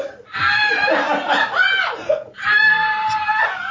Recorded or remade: recorded